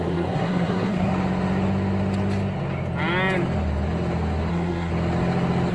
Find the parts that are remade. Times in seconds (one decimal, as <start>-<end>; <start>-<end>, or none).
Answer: 0.0-1.1; 4.5-4.9